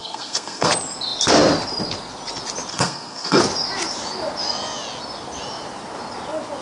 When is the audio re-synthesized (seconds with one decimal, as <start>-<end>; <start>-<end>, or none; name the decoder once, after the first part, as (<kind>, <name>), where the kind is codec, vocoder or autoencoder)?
0.0-0.7 (codec, SNAC); 2.7-3.4